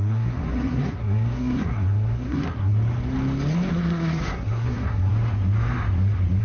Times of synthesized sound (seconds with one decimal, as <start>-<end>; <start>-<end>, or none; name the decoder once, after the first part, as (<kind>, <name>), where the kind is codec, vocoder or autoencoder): 0.0-2.7 (codec, SNAC); 3.7-5.1

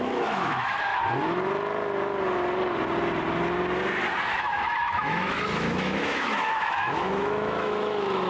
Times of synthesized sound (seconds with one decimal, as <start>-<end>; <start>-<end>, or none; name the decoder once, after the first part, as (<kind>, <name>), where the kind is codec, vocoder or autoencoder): 0.0-0.9 (autoencoder, DAC-VAE); 4.3-8.3

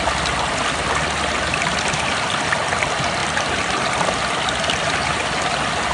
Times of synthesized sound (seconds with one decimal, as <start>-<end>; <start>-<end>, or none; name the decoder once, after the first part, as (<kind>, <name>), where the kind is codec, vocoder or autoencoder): none

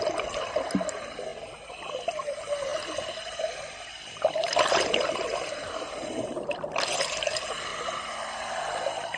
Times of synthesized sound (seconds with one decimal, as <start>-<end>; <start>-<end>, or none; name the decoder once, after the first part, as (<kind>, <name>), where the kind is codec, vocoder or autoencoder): none

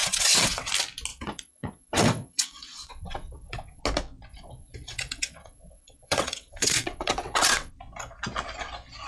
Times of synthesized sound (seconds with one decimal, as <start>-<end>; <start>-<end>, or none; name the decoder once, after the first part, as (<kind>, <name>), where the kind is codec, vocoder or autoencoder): 0.0-0.7 (vocoder, WaveNeXt); 1.1-3.8; 4.3-7.7

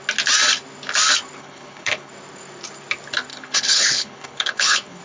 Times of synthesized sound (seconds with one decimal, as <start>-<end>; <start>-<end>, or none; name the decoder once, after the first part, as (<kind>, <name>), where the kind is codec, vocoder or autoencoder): 1.4-2.1 (codec, HILCodec); 3.3-5.0

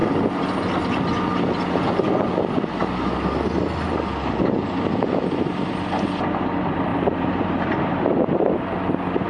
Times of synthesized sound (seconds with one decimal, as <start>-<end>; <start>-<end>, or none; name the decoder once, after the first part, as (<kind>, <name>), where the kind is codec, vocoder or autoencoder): 0.0-0.6 (vocoder, BigVGAN v2); 6.9-8.3